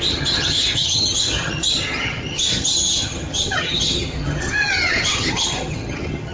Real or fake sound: fake